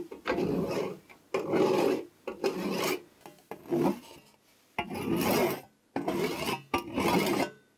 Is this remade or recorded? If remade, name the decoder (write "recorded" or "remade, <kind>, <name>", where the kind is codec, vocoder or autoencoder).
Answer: recorded